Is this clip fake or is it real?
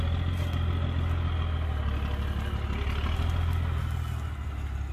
real